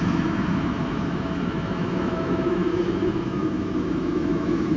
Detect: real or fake fake